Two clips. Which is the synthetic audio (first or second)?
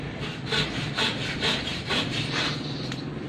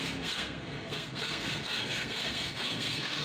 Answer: second